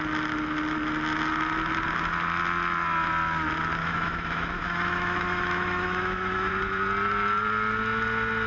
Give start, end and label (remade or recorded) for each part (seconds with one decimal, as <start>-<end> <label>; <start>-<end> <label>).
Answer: 0.0-3.8 recorded; 3.8-6.5 remade; 6.5-8.5 recorded